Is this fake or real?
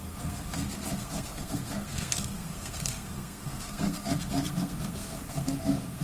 fake